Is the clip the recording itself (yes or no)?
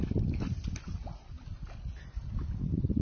yes